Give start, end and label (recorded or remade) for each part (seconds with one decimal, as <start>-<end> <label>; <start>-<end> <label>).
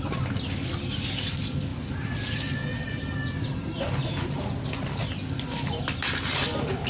0.0-6.9 recorded